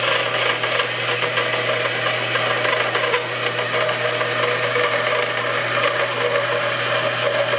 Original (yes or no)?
yes